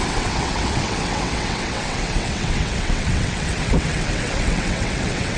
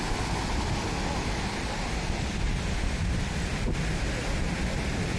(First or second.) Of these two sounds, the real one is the second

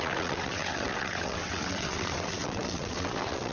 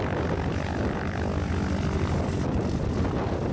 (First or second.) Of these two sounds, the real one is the second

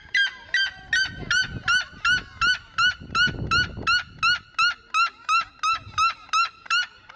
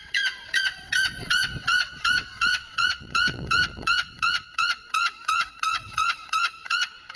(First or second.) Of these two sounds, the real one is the first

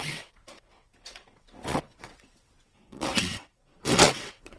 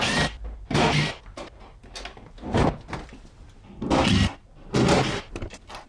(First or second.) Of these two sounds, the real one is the second